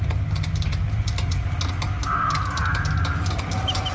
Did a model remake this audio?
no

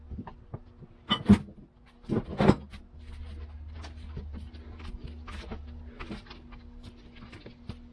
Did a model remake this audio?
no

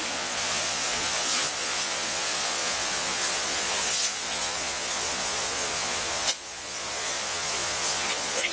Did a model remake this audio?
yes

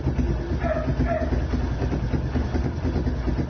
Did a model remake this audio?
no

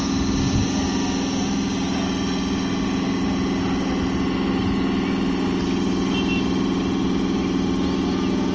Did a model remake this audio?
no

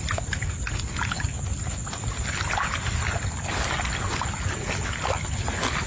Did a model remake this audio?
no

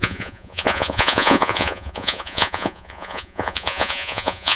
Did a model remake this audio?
yes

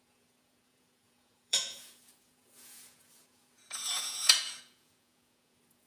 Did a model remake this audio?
yes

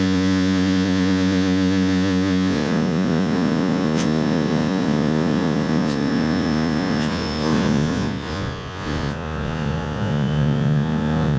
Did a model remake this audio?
yes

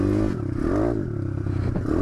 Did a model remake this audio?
no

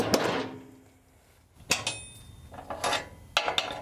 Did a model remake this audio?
no